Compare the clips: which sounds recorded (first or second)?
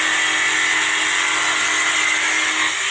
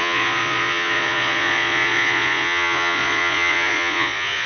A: first